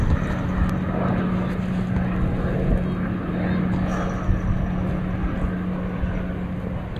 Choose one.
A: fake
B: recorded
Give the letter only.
B